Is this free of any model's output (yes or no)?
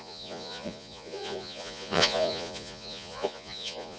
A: no